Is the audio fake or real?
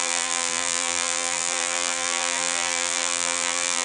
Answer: fake